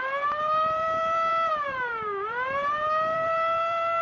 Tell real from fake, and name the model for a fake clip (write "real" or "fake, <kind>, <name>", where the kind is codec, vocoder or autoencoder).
fake, vocoder, BigVGAN v2